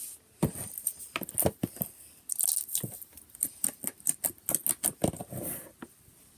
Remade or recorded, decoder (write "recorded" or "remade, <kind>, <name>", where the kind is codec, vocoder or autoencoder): recorded